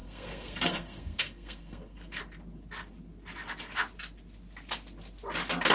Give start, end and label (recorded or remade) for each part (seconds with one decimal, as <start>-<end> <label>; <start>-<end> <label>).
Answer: 0.0-2.2 remade; 2.2-5.7 recorded